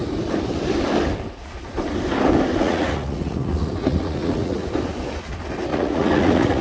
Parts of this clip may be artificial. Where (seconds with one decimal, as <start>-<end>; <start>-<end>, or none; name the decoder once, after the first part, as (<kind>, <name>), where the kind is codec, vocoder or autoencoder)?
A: 2.5-4.7 (vocoder, Vocos); 5.7-6.6